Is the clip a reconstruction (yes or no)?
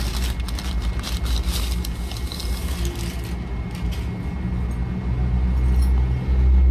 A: no